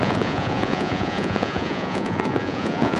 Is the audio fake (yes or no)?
yes